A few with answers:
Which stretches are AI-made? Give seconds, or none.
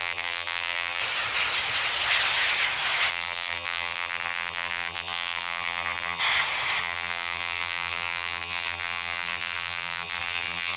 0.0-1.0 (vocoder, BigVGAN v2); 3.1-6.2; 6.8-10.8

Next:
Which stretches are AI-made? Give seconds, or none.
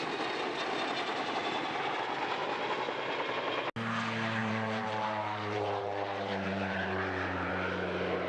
4.4-7.5 (vocoder, BigVGAN v2)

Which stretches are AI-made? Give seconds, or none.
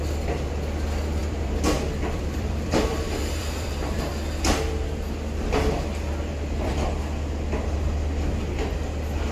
1.2-4.1 (vocoder, BigVGAN v2)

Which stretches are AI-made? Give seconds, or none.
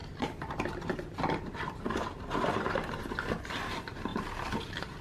4.1-5.0 (vocoder, BigVGAN v2)